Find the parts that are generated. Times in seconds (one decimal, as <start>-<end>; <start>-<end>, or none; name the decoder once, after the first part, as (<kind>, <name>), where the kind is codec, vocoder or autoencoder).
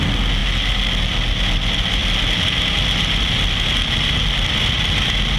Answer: none